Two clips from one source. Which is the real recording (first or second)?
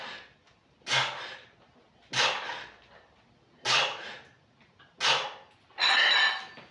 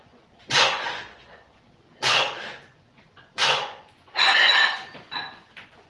first